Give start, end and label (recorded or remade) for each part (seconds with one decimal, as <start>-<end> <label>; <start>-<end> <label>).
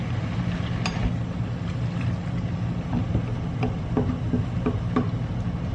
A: 0.0-5.7 recorded